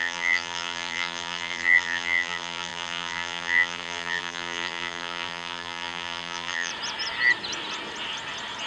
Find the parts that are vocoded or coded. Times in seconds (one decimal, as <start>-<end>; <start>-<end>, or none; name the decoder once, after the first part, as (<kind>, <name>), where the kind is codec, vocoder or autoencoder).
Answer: 0.0-6.7 (vocoder, BigVGAN v2)

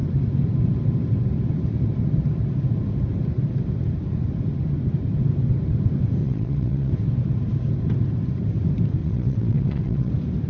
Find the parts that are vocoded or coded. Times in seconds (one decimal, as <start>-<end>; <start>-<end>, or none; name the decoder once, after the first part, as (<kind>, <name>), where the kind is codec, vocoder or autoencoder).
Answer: 6.2-6.9 (vocoder, WaveNeXt); 9.0-10.1

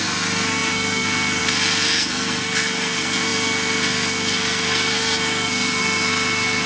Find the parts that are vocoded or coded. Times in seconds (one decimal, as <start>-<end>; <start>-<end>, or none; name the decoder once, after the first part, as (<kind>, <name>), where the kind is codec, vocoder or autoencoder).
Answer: 0.0-6.7 (codec, SNAC)

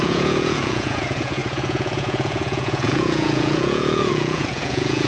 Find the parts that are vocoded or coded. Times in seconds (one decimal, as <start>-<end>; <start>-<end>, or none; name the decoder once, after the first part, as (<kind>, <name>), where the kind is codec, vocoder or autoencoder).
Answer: 0.0-5.1 (vocoder, Vocos)

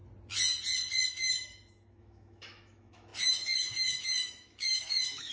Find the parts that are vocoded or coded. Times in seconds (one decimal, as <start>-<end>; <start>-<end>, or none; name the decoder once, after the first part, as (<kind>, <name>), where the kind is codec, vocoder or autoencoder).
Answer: 1.1-5.3 (autoencoder, DAC-VAE)

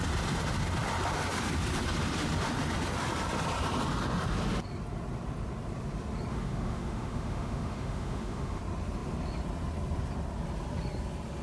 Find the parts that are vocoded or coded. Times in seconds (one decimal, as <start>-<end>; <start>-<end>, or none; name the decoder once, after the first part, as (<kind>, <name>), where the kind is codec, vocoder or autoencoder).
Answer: 6.3-8.6 (autoencoder, DAC-VAE)

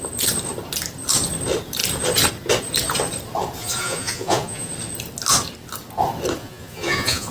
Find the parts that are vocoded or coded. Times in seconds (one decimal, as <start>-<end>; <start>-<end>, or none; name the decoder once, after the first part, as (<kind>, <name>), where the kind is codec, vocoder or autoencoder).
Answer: 3.6-4.7 (vocoder, Vocos); 6.4-7.3